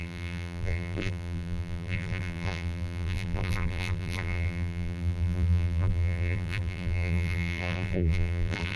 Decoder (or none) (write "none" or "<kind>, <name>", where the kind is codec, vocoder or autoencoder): vocoder, BigVGAN v2